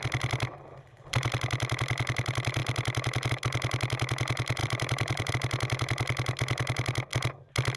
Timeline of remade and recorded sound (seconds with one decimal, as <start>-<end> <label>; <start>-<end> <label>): 0.0-0.5 recorded; 0.5-1.3 remade; 1.3-4.6 recorded; 4.6-5.3 remade; 5.3-7.8 recorded